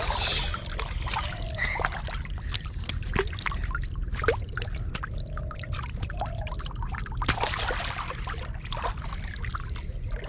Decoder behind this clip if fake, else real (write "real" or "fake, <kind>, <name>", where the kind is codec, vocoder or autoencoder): real